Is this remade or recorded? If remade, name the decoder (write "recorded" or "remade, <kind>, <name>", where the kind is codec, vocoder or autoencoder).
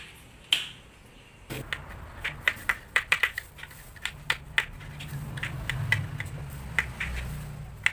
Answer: recorded